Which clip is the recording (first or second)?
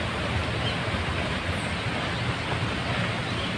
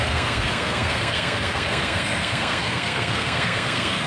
first